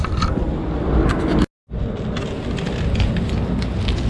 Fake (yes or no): no